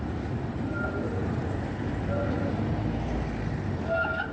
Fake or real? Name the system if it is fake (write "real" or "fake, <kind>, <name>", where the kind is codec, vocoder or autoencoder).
real